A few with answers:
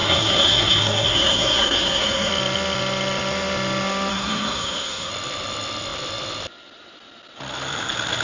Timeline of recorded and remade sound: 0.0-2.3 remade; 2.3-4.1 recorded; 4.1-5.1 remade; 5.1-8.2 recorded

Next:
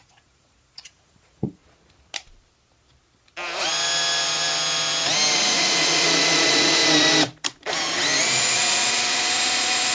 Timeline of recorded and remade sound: 0.0-1.6 remade; 1.6-5.4 recorded; 5.4-6.8 remade; 6.8-8.2 recorded; 8.2-9.9 remade

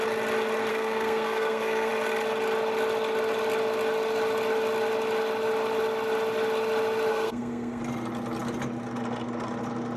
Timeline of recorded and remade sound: 0.0-0.7 recorded; 0.7-1.9 remade; 1.9-7.1 recorded; 7.1-7.8 remade; 7.8-10.0 recorded

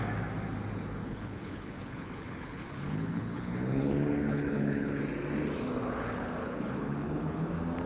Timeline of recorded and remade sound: 0.0-1.0 recorded; 1.0-5.0 remade; 5.0-6.4 recorded; 6.4-7.5 remade; 7.5-7.9 recorded

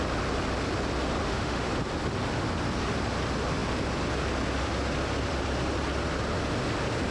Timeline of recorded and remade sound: 0.0-1.2 recorded; 1.2-1.7 remade; 1.7-7.1 recorded

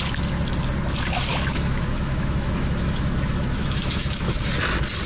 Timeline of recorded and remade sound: 0.0-1.3 recorded; 1.3-4.4 remade; 4.4-5.1 recorded